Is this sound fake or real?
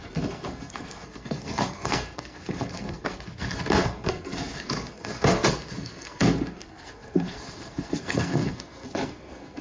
fake